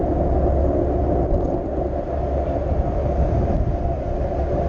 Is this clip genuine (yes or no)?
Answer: yes